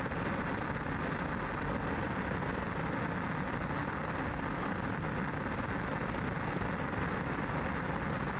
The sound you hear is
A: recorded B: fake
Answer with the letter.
A